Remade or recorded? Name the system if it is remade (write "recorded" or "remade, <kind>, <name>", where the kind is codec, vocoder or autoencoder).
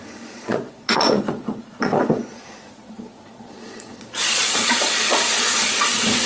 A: remade, vocoder, Vocos